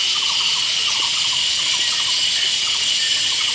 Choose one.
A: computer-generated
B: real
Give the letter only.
B